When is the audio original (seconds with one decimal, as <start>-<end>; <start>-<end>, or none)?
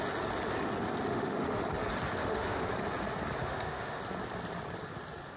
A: 0.0-1.1; 1.6-2.2; 2.7-3.4; 4.0-5.4